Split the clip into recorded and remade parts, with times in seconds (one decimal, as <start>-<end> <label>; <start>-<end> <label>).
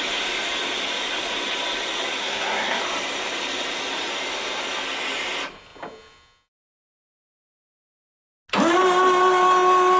0.0-2.2 recorded; 2.2-2.8 remade; 2.8-10.0 recorded